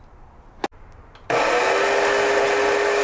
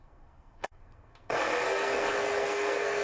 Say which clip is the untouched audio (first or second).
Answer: first